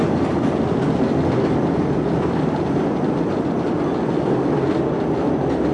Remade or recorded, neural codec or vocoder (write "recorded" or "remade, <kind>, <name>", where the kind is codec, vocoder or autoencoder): recorded